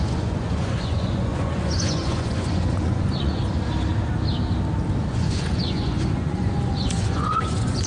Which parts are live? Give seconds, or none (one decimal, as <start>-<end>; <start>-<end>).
3.4-5.1